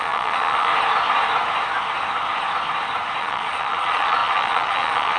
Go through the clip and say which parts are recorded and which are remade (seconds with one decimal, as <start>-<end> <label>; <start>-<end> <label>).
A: 0.0-0.7 remade; 0.7-3.2 recorded; 3.2-5.2 remade